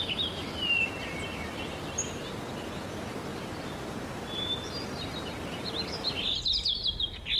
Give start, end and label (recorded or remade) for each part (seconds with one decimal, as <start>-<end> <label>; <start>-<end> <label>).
0.0-0.4 recorded; 0.4-1.7 remade; 1.7-3.3 recorded; 3.3-6.2 remade; 6.2-7.4 recorded